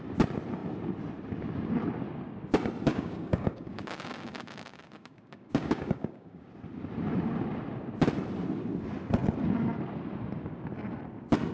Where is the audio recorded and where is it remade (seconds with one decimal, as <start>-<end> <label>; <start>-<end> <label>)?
0.0-2.9 recorded; 2.9-6.5 remade; 6.5-11.5 recorded